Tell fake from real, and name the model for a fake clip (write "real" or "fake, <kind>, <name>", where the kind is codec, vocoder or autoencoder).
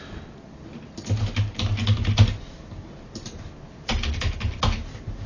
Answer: real